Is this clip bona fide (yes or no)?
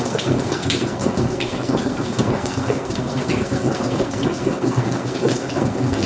no